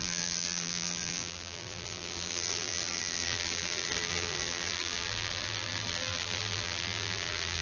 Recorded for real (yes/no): no